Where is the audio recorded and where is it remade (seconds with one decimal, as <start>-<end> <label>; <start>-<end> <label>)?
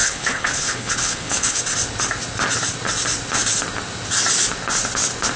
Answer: 0.0-1.6 remade; 1.6-5.4 recorded